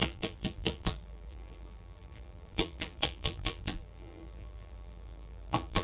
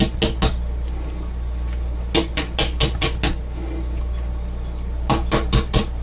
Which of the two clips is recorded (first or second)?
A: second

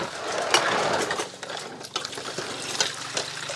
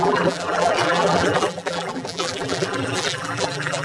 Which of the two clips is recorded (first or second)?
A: first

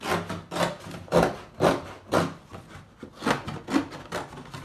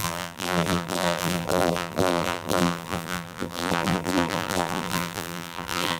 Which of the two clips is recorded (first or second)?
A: first